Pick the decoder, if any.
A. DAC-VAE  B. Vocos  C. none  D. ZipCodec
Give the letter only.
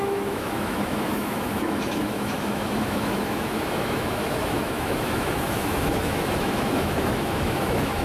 A